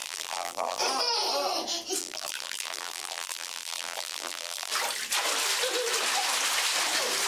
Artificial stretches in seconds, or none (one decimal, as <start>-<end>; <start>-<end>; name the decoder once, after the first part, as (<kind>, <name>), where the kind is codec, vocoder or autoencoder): 0.0-0.8 (vocoder, BigVGAN v2); 2.0-4.7

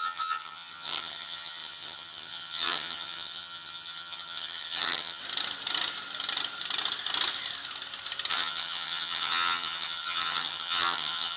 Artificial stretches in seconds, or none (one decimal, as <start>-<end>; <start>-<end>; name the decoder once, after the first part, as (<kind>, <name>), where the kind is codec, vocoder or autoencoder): 0.0-5.2 (vocoder, HiFi-GAN); 8.3-11.4

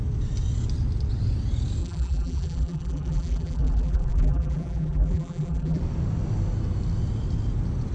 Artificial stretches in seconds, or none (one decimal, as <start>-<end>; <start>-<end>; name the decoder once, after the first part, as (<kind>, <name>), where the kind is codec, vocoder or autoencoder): 1.8-5.8 (vocoder, BigVGAN v2)

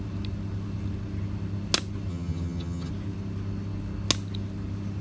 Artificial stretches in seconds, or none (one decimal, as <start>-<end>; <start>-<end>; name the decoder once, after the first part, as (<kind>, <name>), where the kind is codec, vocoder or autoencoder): 2.1-2.9 (vocoder, HiFi-GAN)

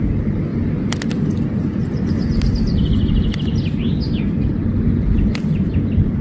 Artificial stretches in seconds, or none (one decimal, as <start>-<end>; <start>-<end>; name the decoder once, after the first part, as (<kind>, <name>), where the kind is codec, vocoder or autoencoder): none

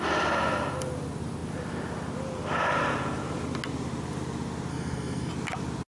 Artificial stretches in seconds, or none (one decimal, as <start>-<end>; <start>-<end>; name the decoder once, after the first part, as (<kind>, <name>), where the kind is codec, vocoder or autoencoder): 4.7-5.3 (codec, SNAC)

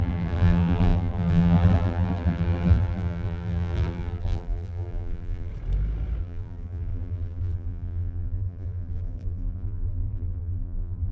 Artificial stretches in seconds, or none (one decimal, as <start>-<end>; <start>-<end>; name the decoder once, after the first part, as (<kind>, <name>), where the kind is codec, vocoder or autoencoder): 0.0-5.5 (vocoder, BigVGAN v2); 6.2-11.1